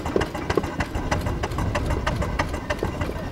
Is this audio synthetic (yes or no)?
no